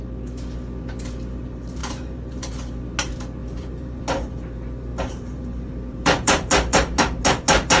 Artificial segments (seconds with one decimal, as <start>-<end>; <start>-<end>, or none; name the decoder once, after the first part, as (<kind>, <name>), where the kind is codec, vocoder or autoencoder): 1.8-2.5 (vocoder, BigVGAN v2); 3.4-4.0; 4.9-7.8